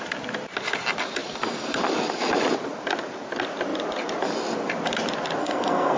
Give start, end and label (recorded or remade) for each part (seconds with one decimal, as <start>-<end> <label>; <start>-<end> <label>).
0.0-5.4 recorded; 5.4-6.0 remade